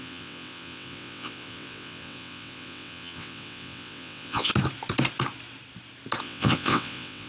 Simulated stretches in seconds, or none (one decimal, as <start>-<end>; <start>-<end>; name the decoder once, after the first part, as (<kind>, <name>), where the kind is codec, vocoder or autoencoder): 0.0-4.5 (vocoder, WaveNeXt); 6.2-7.3

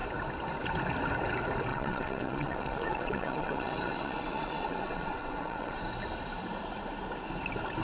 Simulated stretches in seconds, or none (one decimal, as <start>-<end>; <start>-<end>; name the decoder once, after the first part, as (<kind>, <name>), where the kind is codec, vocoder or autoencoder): 1.7-5.8 (vocoder, WaveNeXt)

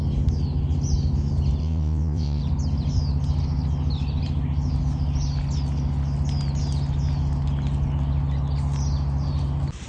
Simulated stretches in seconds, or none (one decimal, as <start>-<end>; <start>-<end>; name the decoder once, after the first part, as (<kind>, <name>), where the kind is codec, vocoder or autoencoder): 1.6-2.4 (vocoder, WaveNeXt)

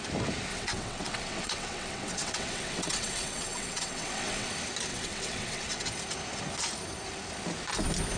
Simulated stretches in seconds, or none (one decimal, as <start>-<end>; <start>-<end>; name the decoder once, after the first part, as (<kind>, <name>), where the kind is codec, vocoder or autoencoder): 0.5-4.5 (vocoder, WaveNeXt); 4.9-5.9

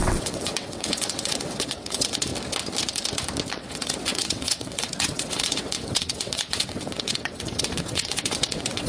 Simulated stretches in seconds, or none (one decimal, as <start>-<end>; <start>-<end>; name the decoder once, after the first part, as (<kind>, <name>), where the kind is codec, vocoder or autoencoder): 0.0-2.3 (vocoder, WaveNeXt); 3.5-8.9

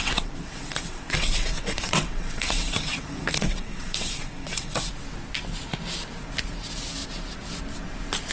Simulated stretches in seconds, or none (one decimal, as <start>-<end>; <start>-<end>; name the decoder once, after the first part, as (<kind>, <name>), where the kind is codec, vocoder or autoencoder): 0.0-4.9 (vocoder, WaveNeXt)

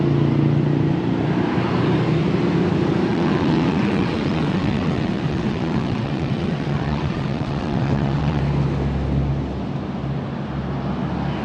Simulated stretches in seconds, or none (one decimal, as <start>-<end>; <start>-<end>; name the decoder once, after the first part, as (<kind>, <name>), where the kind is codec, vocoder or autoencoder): 3.1-8.4 (vocoder, WaveNeXt)